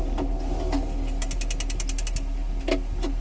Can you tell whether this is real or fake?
real